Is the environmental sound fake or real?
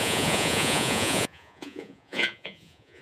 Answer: fake